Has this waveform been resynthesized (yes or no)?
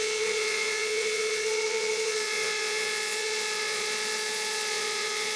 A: yes